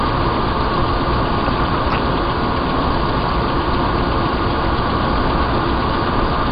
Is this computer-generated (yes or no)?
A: no